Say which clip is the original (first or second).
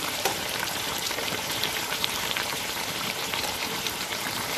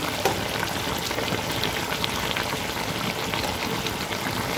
second